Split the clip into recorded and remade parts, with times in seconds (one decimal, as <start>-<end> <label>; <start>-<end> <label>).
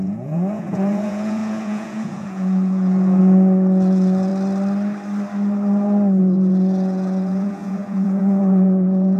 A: 0.0-4.3 remade; 4.3-6.2 recorded; 6.2-9.2 remade